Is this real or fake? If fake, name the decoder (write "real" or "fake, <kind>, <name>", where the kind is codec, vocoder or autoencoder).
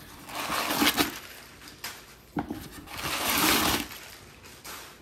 real